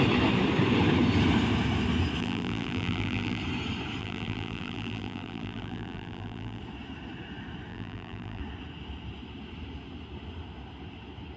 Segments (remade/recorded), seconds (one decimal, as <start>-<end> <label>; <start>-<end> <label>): 0.0-2.2 recorded; 2.2-3.4 remade; 3.4-4.0 recorded; 4.0-6.6 remade; 6.6-7.7 recorded; 7.7-8.4 remade; 8.4-11.4 recorded